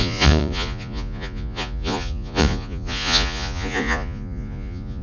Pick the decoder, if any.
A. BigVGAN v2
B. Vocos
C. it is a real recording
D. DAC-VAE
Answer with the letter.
B